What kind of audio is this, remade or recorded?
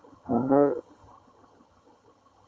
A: remade